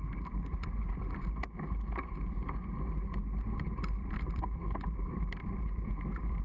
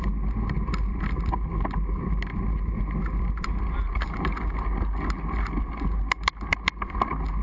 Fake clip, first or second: first